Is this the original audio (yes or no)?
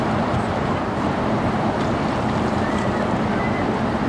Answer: yes